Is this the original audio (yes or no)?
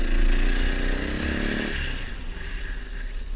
yes